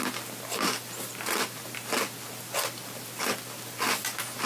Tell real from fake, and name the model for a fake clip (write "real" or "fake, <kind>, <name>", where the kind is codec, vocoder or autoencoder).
real